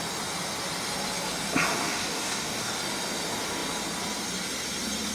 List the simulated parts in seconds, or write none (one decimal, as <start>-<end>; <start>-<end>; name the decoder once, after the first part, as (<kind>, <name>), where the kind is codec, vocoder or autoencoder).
1.8-2.7 (codec, DAC)